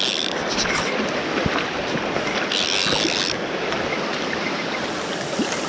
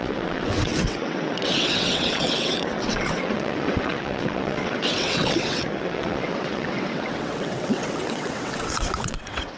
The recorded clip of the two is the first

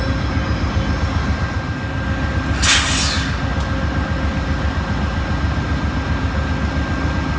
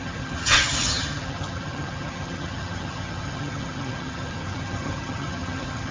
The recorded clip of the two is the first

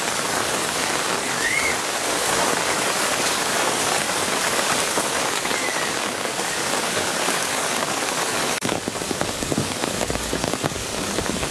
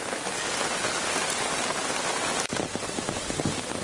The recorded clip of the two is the second